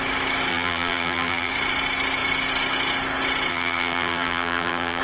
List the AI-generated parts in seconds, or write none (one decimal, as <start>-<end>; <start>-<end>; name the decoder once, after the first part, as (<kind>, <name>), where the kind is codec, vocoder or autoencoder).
0.5-1.5 (vocoder, BigVGAN v2); 3.5-5.0